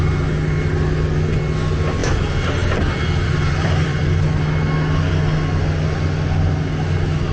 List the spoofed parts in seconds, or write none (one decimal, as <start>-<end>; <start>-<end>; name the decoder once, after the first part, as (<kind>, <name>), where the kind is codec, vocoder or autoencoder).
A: 2.0-4.2 (vocoder, BigVGAN v2)